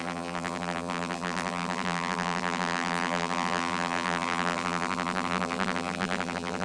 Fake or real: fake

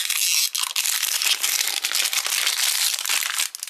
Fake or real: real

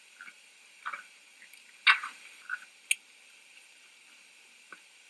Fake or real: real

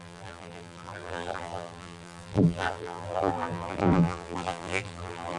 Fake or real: fake